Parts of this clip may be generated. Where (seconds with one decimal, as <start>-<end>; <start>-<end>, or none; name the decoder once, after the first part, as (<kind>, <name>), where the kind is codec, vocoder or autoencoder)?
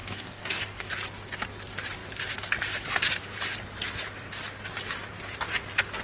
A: 0.0-0.9 (codec, DAC)